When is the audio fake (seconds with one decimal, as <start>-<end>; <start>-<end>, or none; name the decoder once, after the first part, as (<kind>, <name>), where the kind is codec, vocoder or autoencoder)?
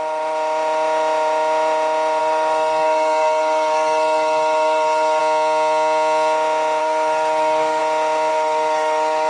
2.2-5.2 (codec, SNAC); 6.8-7.8; 8.3-9.3